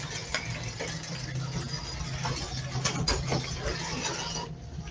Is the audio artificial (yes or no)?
no